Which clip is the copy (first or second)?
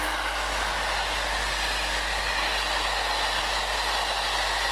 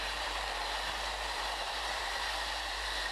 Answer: second